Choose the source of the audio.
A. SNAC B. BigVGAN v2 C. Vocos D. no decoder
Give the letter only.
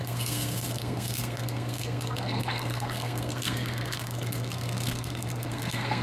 A